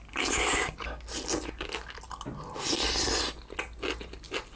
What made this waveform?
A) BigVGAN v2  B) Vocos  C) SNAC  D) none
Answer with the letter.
D